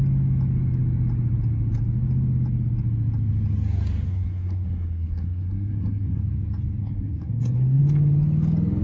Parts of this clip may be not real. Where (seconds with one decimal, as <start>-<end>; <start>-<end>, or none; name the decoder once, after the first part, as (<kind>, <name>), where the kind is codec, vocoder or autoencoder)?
4.1-6.2 (codec, SNAC); 6.8-7.8